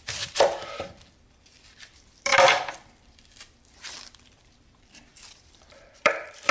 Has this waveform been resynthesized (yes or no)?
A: yes